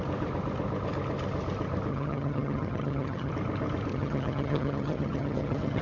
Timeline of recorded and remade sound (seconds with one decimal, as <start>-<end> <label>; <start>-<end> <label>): 0.0-1.9 recorded; 1.9-3.3 remade; 3.3-3.9 recorded; 3.9-5.8 remade